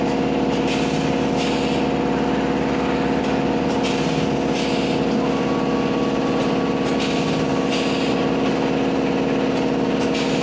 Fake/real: real